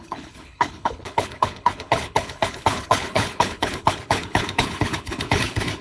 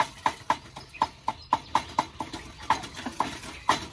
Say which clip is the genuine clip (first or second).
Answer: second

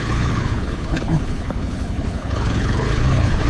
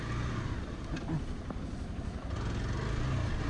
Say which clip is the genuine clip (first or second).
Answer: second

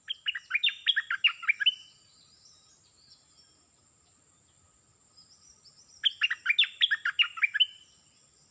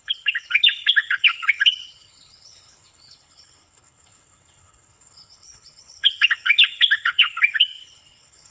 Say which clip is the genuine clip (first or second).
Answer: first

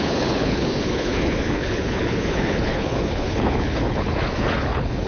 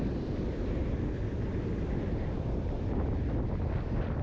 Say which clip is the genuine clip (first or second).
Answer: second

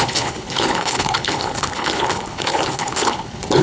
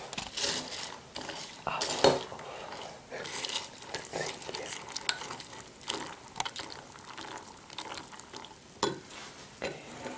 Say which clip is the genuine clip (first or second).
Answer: second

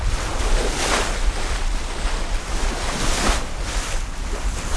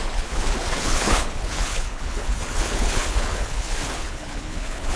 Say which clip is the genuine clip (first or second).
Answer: first